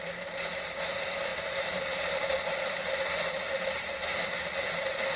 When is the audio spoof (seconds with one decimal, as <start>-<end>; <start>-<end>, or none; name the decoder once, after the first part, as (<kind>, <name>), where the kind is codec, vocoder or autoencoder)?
1.3-4.4 (vocoder, BigVGAN v2)